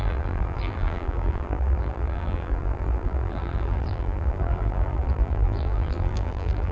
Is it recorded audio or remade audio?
remade